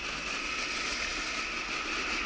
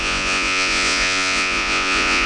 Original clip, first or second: first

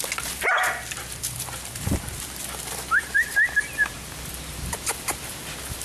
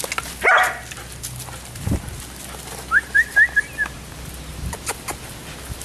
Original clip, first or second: second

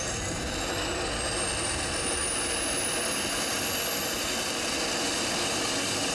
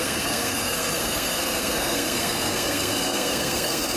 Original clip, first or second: first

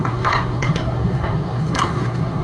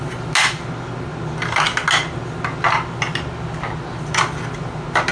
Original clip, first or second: second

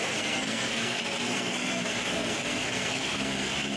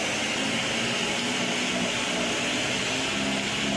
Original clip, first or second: second